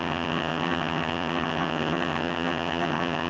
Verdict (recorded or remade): remade